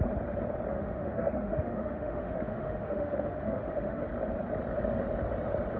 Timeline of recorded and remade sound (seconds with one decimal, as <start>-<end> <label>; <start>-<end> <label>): 0.0-0.7 recorded; 0.7-4.0 remade; 4.0-5.8 recorded

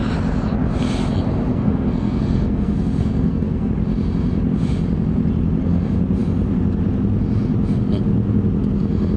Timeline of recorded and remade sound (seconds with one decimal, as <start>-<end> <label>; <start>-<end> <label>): 0.0-1.5 recorded; 1.5-3.7 remade; 3.7-9.2 recorded

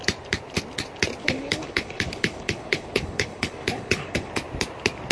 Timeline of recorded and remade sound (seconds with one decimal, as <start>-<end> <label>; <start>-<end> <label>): 0.0-1.2 recorded; 1.2-4.3 remade; 4.3-5.1 recorded

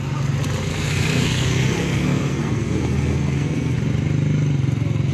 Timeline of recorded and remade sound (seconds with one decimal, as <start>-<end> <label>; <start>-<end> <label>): 0.0-0.7 recorded; 0.7-3.8 remade; 3.8-5.1 recorded